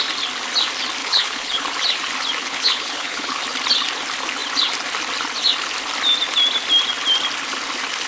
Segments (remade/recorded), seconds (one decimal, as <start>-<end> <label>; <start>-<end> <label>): 0.0-1.0 recorded; 1.0-1.7 remade; 1.7-2.4 recorded; 2.4-3.4 remade; 3.4-8.1 recorded